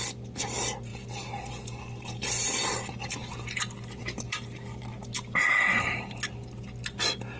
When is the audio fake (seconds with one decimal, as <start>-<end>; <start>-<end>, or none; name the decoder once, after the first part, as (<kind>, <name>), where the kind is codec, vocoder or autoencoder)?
none